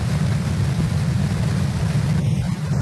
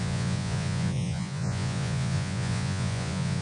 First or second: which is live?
first